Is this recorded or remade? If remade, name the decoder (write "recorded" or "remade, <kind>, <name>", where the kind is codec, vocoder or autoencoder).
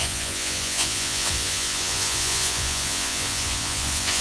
remade, vocoder, Vocos